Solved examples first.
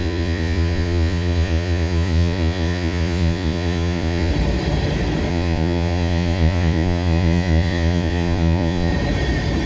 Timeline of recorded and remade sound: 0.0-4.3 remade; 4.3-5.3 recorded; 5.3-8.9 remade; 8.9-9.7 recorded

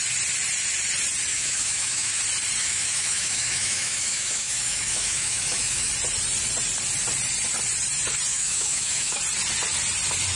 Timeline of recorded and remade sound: 0.0-1.3 recorded; 1.3-2.2 remade; 2.2-2.6 recorded; 2.6-5.9 remade; 5.9-8.3 recorded; 8.3-9.2 remade; 9.2-10.4 recorded

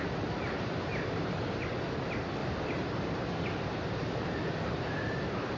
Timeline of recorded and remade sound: 0.0-0.9 recorded; 0.9-1.7 remade; 1.7-2.4 recorded; 2.4-4.9 remade; 4.9-5.6 recorded

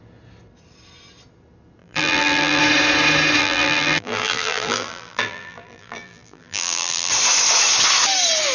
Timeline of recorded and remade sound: 0.0-1.8 recorded; 1.8-2.6 remade; 2.6-3.4 recorded; 3.4-7.1 remade; 7.1-8.5 recorded

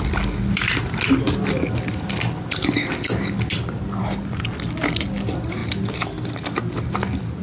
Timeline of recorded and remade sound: 0.0-7.4 recorded

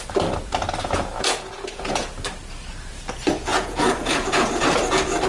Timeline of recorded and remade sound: 0.0-0.8 recorded; 0.8-2.0 remade; 2.0-3.5 recorded; 3.5-4.8 remade; 4.8-5.3 recorded

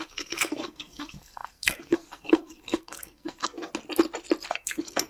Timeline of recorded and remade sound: 0.0-3.7 remade; 3.7-4.5 recorded; 4.5-5.1 remade

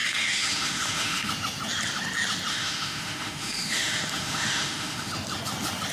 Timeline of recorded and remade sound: 0.0-1.3 remade; 1.3-2.5 recorded; 2.5-5.1 remade; 5.1-5.9 recorded